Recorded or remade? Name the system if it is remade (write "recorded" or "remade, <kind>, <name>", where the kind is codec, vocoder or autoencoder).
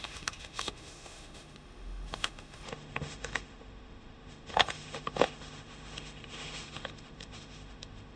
remade, autoencoder, DAC-VAE